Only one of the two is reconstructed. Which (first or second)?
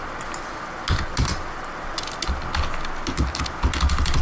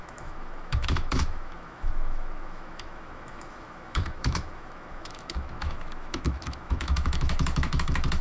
second